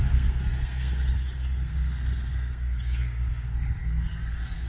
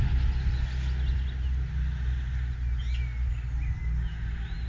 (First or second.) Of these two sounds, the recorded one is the second